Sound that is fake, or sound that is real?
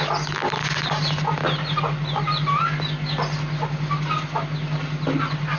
real